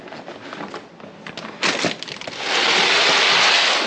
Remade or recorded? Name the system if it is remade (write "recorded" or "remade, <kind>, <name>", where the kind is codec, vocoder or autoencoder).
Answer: recorded